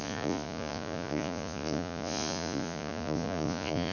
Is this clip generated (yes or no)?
yes